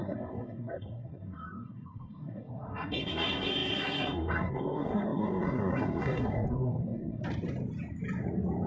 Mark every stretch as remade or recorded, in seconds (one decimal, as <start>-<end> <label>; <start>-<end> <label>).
0.0-7.2 remade; 7.2-8.7 recorded